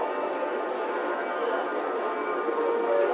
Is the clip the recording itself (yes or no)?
yes